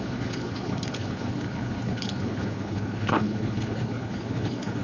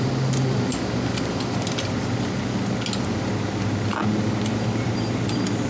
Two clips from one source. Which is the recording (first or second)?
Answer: second